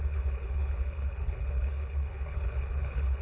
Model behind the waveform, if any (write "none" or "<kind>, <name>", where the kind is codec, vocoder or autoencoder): codec, HILCodec